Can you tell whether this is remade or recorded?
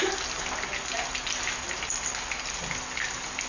recorded